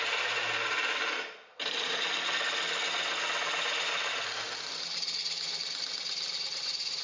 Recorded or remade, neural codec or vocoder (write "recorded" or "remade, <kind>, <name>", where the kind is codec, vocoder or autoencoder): recorded